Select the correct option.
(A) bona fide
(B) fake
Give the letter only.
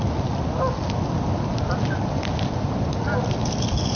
A